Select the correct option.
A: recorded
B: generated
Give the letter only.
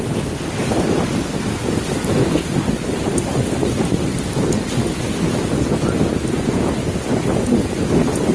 A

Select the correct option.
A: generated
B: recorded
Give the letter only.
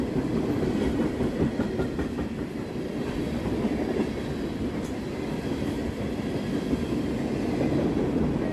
B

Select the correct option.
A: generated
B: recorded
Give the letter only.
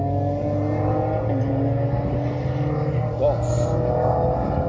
B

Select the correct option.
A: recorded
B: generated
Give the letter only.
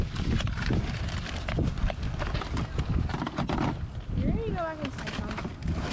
A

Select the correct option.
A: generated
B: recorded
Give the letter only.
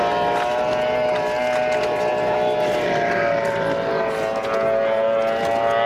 B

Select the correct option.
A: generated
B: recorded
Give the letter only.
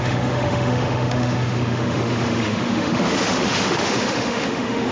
A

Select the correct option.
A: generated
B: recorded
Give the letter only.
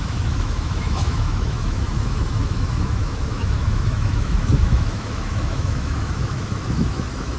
A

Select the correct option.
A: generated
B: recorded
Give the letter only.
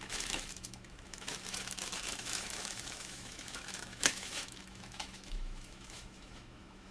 A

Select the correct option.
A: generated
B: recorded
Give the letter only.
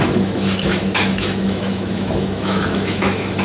A